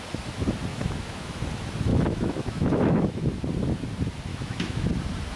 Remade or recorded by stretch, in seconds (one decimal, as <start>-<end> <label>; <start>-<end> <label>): 0.0-0.7 recorded; 0.7-1.4 remade; 1.4-1.9 recorded; 1.9-3.3 remade; 3.3-4.3 recorded; 4.3-4.9 remade; 4.9-5.4 recorded